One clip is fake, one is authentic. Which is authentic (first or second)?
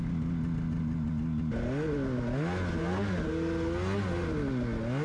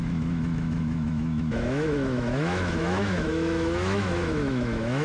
first